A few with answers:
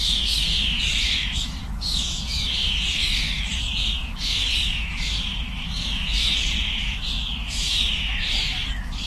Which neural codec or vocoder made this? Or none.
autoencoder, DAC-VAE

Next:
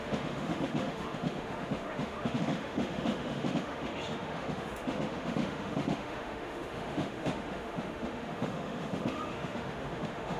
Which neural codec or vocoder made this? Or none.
autoencoder, DAC-VAE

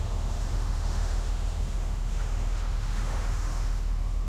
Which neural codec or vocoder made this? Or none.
autoencoder, DAC-VAE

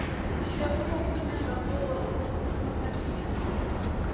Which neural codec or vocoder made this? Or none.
none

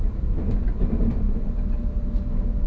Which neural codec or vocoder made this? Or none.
none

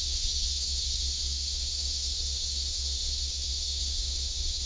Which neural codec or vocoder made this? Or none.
autoencoder, DAC-VAE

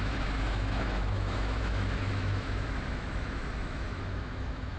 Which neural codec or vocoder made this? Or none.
autoencoder, DAC-VAE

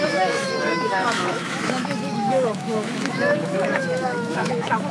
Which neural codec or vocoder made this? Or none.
autoencoder, DAC-VAE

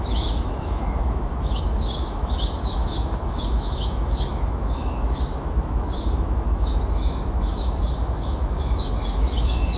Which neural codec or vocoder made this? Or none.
autoencoder, DAC-VAE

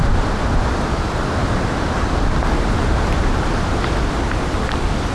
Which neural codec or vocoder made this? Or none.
none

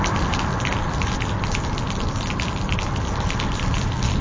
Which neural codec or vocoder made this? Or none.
none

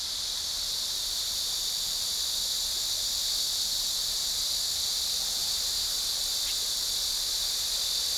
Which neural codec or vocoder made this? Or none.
none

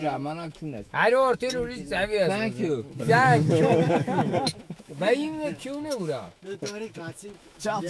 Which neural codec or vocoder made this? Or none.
autoencoder, DAC-VAE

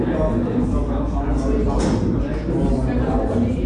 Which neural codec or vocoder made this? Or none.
none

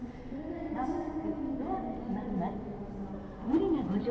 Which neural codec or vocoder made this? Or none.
none